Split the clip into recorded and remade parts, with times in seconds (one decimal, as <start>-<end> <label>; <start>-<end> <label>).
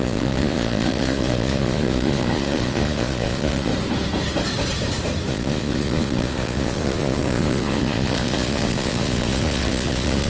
0.0-3.7 remade; 3.7-5.3 recorded; 5.3-10.3 remade